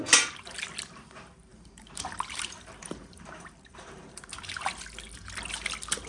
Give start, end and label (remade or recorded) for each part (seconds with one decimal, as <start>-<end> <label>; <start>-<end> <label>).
0.0-1.5 recorded; 1.5-4.2 remade; 4.2-6.1 recorded